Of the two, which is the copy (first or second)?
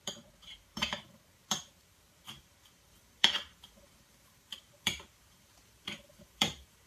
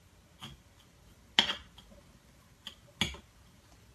first